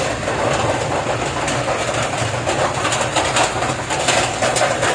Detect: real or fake real